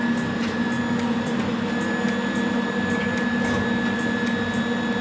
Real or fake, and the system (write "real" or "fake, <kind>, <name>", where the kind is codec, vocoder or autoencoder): real